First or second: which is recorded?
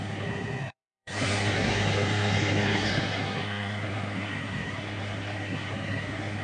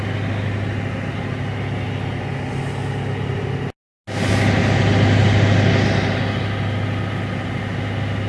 second